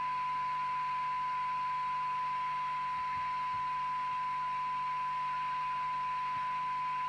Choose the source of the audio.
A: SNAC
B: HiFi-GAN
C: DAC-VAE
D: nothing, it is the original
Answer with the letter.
D